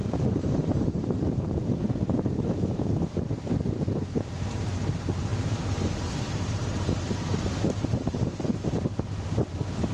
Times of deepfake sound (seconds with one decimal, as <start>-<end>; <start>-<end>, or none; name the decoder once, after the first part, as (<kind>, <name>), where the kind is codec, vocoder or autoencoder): 0.0-9.9 (vocoder, BigVGAN v2)